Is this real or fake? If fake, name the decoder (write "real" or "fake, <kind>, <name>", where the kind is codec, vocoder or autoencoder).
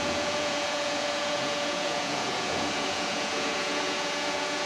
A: fake, vocoder, Vocos